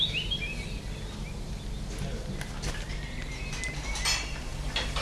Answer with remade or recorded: recorded